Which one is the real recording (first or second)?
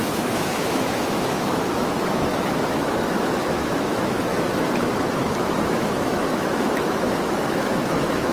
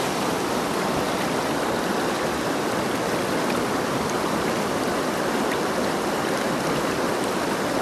second